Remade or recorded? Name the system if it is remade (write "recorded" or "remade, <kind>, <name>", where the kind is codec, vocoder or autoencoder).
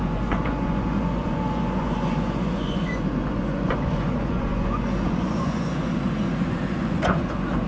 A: remade, vocoder, Vocos